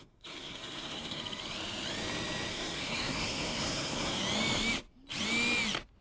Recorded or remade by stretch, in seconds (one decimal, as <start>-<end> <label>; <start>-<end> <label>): 0.0-1.2 remade; 1.2-2.5 recorded; 2.5-4.2 remade; 4.2-6.0 recorded